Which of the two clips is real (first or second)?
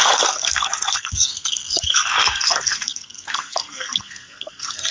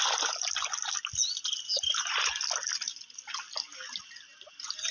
second